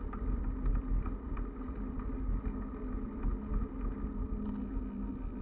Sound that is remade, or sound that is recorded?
recorded